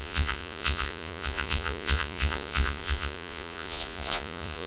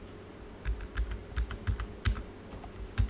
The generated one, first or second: first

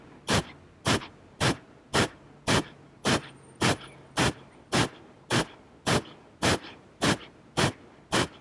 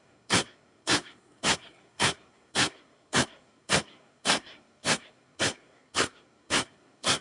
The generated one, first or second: second